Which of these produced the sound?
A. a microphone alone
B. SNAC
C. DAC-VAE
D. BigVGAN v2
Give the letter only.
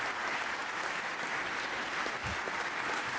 A